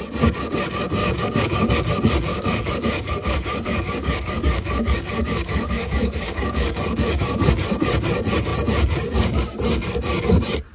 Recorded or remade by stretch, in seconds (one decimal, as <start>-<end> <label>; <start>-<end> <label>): 0.0-1.0 recorded; 1.0-1.7 remade; 1.7-2.3 recorded; 2.3-7.5 remade; 7.5-10.7 recorded